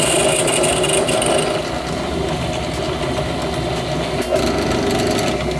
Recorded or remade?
recorded